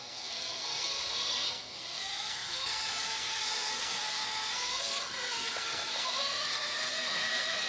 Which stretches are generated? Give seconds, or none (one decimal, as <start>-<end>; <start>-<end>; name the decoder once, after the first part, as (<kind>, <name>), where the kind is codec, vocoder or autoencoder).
0.0-7.7 (codec, SNAC)